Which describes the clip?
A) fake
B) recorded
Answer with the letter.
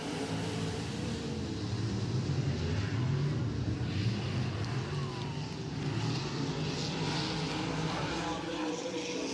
B